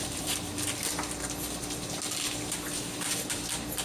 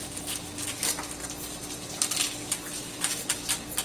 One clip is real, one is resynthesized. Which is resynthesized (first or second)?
first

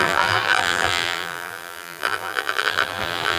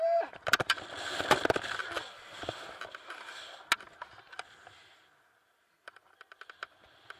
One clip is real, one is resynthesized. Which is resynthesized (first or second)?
first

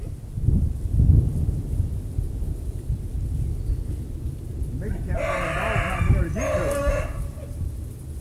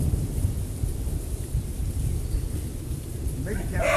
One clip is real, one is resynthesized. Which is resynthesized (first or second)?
second